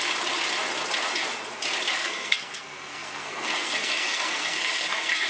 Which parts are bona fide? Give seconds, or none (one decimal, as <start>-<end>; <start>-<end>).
0.0-2.0